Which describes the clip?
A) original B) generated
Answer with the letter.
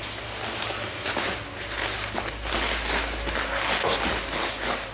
A